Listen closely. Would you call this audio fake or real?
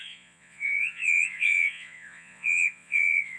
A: fake